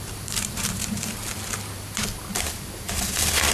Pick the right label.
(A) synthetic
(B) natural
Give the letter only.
A